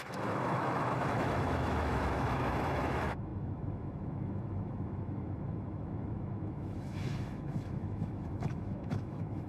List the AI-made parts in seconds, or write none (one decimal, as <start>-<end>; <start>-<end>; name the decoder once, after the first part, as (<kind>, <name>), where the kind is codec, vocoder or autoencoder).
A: 0.0-9.5 (autoencoder, DAC-VAE)